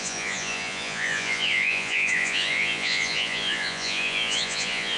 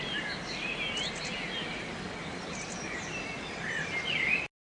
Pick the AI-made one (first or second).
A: first